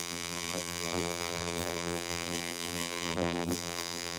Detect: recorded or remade remade